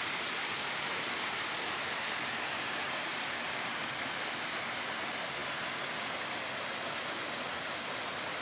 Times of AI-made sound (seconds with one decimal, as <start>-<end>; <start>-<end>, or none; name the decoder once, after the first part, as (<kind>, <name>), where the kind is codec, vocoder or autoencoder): none